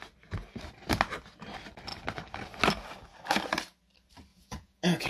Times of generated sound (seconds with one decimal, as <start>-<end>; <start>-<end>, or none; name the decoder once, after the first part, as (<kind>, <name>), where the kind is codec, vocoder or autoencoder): 4.3-5.1 (vocoder, Vocos)